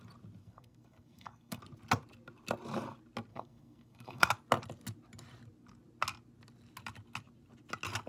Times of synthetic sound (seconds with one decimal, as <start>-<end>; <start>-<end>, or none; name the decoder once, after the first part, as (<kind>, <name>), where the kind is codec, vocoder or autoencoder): 0.4-1.6 (codec, SNAC); 3.3-4.3